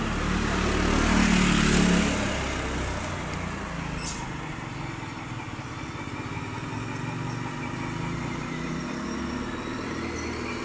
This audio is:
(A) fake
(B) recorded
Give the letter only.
B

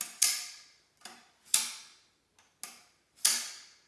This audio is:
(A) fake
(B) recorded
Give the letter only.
B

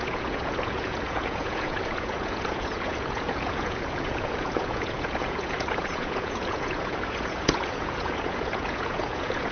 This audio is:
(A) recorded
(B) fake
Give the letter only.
B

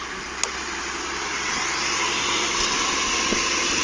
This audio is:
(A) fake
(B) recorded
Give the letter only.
B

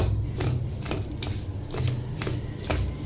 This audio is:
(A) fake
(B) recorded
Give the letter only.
B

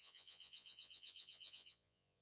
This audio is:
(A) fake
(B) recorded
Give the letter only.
A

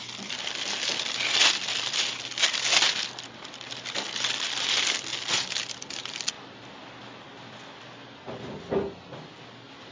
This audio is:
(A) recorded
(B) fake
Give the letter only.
A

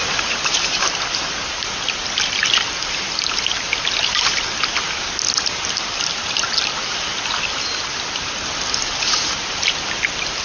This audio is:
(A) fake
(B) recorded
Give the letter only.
B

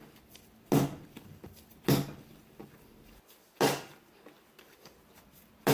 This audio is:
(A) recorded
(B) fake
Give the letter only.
A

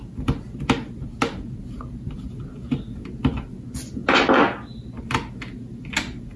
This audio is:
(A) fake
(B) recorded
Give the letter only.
B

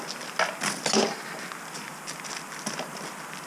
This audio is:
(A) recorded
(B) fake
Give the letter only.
A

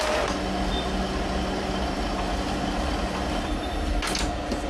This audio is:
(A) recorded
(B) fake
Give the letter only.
A